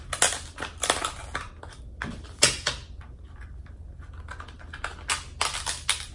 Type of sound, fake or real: real